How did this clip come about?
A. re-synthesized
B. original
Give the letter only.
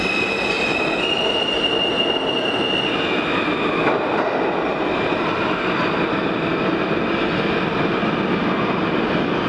B